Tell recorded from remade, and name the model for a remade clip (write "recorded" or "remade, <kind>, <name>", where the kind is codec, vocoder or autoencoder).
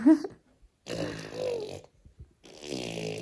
recorded